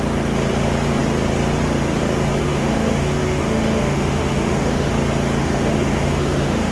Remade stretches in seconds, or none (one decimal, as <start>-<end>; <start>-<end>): 2.4-4.9; 5.4-6.7